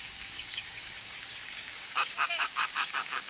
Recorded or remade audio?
remade